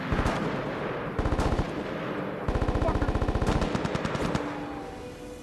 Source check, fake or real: real